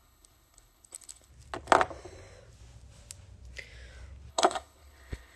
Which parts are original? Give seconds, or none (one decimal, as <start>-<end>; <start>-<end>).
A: 1.3-4.3

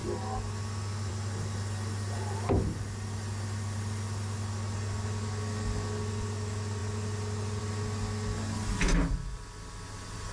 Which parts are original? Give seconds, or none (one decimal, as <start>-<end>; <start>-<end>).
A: 0.0-10.3